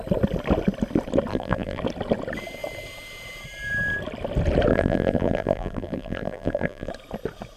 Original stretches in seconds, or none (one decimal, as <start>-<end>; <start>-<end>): 0.0-1.3; 1.8-4.7; 6.9-7.6